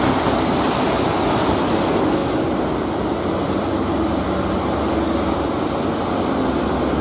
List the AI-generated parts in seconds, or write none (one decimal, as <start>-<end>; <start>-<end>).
none